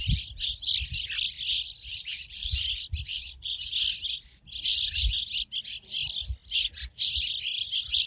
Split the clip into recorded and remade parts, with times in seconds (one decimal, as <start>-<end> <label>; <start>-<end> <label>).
0.0-1.9 recorded; 1.9-2.7 remade; 2.7-3.1 recorded; 3.1-3.7 remade; 3.7-8.1 recorded